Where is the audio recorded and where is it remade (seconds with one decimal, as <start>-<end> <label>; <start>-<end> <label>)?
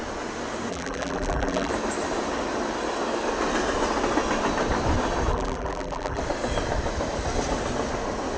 0.0-0.7 recorded; 0.7-1.7 remade; 1.7-5.3 recorded; 5.3-6.2 remade; 6.2-8.4 recorded